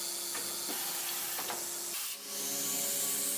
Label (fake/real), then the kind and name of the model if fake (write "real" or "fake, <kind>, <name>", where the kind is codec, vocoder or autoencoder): real